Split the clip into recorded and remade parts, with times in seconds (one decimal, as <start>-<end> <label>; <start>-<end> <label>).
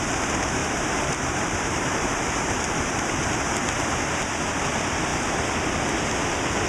0.0-0.6 recorded; 0.6-3.3 remade; 3.3-6.7 recorded